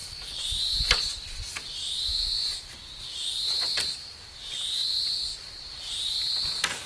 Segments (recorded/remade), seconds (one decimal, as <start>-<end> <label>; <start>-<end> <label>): 0.0-0.8 remade; 0.8-2.1 recorded; 2.1-2.9 remade; 2.9-6.9 recorded